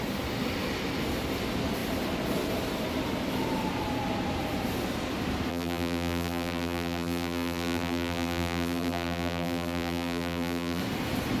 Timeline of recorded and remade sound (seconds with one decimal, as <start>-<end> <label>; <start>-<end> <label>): 0.0-5.5 recorded; 5.5-10.8 remade; 10.8-11.4 recorded